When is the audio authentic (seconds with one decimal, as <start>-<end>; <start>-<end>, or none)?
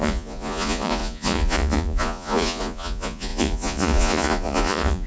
none